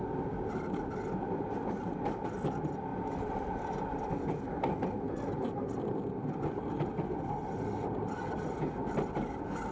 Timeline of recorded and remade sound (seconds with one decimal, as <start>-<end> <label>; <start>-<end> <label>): 0.0-2.9 recorded; 2.9-4.1 remade; 4.1-9.7 recorded